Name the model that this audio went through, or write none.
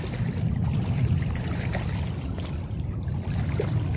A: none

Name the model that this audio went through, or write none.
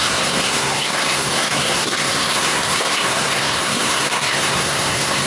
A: codec, SNAC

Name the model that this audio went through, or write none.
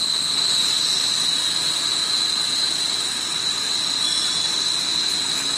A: none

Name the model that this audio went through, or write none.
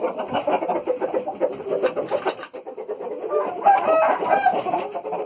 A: none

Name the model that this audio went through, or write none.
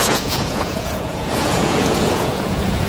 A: vocoder, Vocos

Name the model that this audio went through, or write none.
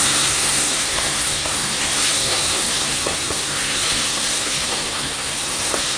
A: codec, SNAC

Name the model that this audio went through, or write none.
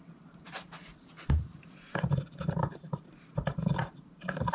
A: vocoder, BigVGAN v2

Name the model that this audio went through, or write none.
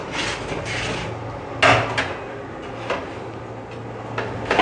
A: none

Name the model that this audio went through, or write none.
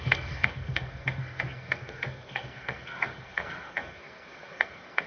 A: codec, SNAC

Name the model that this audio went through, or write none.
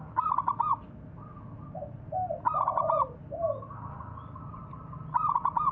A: none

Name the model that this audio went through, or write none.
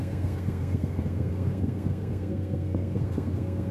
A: codec, SNAC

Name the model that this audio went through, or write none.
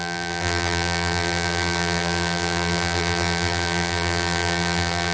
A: vocoder, BigVGAN v2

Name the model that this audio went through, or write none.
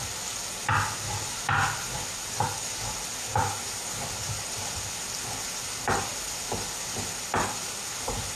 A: none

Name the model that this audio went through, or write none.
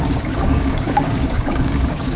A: codec, DAC